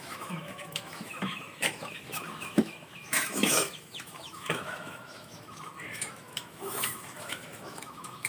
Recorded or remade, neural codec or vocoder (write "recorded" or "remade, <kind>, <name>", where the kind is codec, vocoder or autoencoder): remade, autoencoder, DAC-VAE